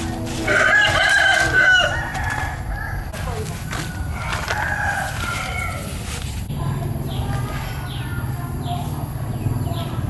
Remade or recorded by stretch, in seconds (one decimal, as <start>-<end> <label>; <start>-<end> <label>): 0.0-10.1 recorded